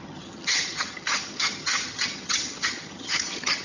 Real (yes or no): no